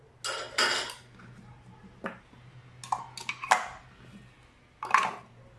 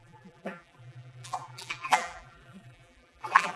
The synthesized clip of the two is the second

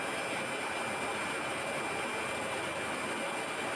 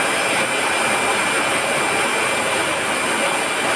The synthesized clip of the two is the second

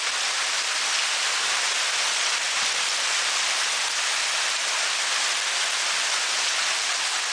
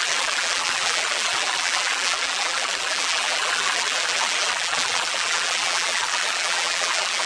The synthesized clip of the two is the second